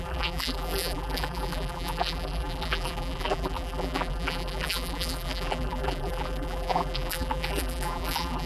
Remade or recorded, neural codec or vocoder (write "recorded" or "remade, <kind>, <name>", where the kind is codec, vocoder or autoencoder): remade, vocoder, BigVGAN v2